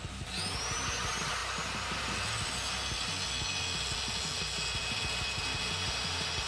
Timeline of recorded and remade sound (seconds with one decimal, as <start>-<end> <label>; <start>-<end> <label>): 0.0-6.5 recorded